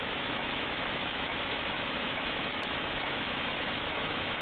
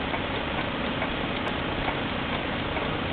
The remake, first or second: first